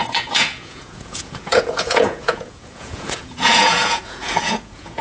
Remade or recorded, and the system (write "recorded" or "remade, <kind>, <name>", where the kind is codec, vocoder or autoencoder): remade, vocoder, Vocos